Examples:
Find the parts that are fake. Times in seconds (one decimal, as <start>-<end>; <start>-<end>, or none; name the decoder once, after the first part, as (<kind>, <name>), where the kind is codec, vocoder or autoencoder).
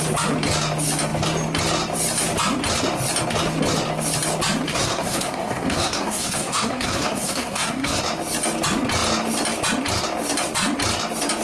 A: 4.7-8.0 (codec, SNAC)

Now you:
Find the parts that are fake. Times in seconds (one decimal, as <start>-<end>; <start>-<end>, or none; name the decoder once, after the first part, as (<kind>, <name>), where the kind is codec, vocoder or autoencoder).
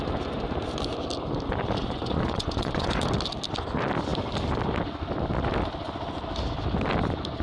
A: 1.8-3.0 (vocoder, Vocos)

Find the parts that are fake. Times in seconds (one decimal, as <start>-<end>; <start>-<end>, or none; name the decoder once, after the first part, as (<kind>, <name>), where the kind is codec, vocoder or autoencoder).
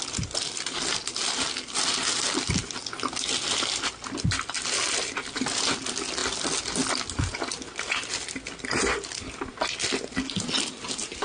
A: none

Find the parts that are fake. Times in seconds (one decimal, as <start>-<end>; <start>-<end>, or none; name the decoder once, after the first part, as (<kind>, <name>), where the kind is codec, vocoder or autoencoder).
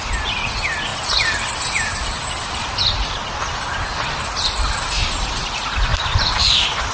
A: 0.9-3.3 (vocoder, BigVGAN v2); 5.9-6.5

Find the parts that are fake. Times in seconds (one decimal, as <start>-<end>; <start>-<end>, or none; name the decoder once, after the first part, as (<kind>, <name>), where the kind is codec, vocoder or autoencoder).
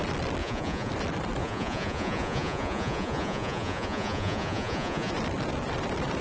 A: 0.4-0.9 (vocoder, Vocos); 1.4-5.1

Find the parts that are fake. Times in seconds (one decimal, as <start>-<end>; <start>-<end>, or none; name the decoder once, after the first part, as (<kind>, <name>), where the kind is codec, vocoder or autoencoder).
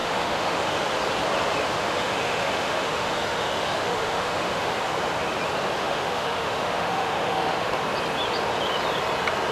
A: 0.0-0.8 (autoencoder, DAC-VAE); 1.8-4.7; 5.8-7.7